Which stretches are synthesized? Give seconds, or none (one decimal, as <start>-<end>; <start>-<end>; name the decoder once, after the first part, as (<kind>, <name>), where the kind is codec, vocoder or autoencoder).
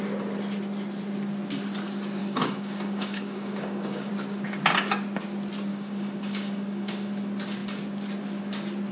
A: 2.2-4.1 (codec, DAC); 5.7-7.1